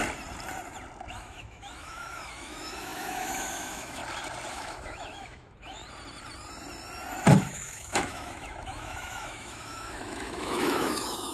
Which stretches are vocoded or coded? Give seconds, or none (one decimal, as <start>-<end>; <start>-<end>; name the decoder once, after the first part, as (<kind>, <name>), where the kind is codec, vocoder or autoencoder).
1.1-4.0 (autoencoder, DAC-VAE); 4.5-5.8; 7.4-11.3